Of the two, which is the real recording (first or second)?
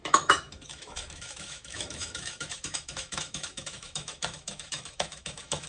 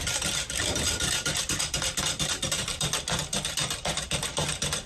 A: second